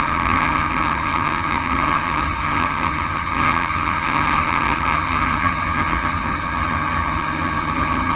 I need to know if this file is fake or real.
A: fake